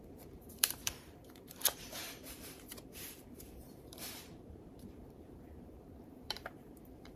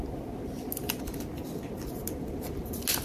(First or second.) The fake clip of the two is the first